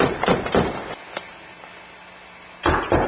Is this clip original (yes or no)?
yes